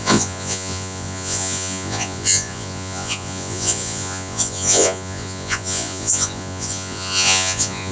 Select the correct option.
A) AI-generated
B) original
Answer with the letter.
A